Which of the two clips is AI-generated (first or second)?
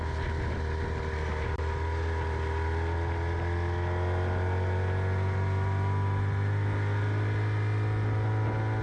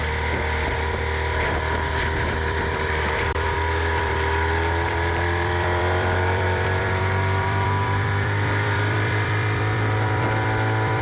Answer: second